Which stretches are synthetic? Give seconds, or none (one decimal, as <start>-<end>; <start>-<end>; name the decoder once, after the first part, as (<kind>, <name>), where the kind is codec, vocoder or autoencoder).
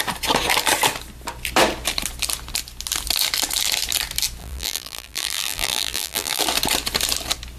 4.4-6.4 (vocoder, BigVGAN v2)